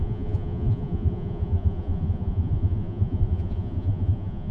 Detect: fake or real fake